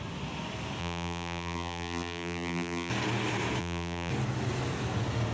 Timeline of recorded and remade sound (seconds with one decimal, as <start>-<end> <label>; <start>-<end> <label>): 0.0-0.8 recorded; 0.8-2.9 remade; 2.9-3.6 recorded; 3.6-4.1 remade; 4.1-5.3 recorded